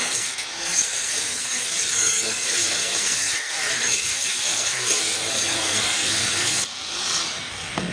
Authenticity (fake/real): fake